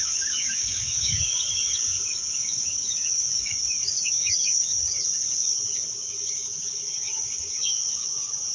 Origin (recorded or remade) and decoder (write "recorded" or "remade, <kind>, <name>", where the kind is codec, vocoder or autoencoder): remade, codec, DAC